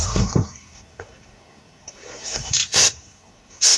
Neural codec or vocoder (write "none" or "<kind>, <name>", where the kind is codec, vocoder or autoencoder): codec, SNAC